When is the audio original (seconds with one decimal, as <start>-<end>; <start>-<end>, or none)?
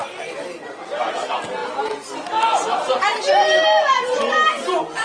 0.0-5.0